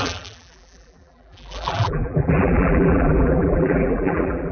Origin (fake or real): fake